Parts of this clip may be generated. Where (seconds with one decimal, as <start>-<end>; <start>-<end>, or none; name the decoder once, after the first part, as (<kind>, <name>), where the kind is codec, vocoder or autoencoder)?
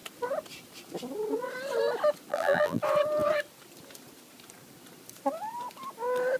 2.3-2.8 (vocoder, BigVGAN v2)